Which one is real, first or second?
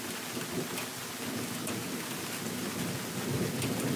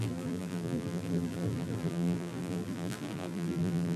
first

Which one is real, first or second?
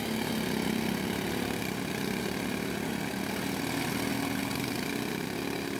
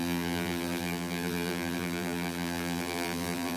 first